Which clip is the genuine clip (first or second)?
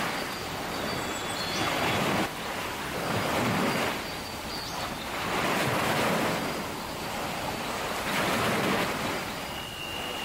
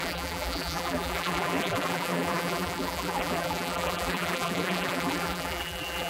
first